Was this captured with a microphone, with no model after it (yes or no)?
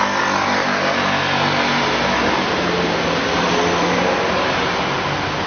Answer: yes